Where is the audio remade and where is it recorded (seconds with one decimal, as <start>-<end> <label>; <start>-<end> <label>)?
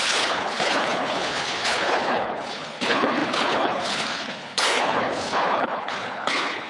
0.0-6.7 remade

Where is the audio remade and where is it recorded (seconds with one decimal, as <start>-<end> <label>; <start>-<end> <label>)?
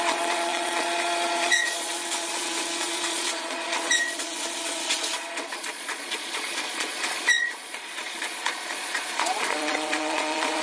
0.0-10.6 remade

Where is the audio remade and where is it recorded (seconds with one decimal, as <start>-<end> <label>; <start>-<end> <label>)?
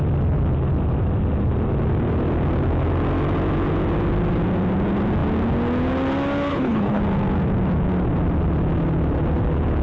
0.0-6.5 recorded; 6.5-7.0 remade; 7.0-9.8 recorded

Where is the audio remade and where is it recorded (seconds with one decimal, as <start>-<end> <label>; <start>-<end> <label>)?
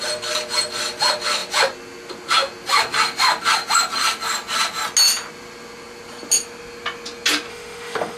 0.0-7.5 recorded; 7.5-8.2 remade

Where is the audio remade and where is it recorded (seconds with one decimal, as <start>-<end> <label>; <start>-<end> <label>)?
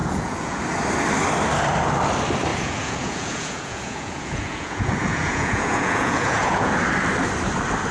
0.0-0.6 remade; 0.6-2.5 recorded; 2.5-6.7 remade; 6.7-7.9 recorded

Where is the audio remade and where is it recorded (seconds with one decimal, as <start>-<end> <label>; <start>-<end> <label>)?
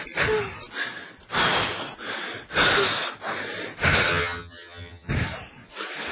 0.0-4.1 recorded; 4.1-5.1 remade; 5.1-6.1 recorded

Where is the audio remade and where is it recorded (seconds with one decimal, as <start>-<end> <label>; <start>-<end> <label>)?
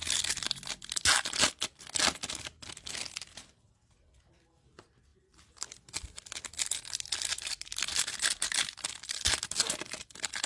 0.0-10.5 recorded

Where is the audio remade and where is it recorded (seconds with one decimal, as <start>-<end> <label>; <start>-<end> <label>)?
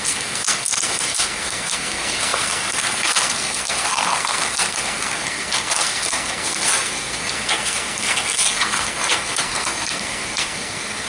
0.0-11.1 remade